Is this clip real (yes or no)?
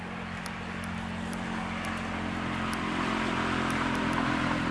yes